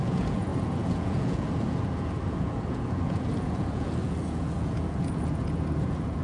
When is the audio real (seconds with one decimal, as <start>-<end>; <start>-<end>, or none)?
none